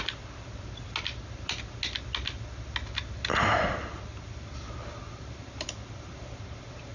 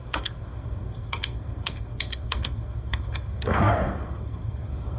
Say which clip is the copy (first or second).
second